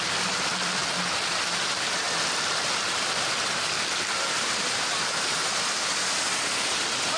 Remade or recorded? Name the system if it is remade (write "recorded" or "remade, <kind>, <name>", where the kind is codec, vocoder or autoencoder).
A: recorded